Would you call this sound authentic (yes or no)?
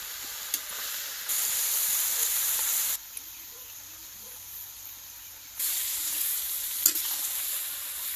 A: yes